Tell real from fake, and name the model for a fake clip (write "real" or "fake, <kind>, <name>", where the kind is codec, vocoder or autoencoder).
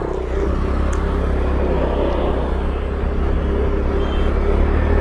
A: real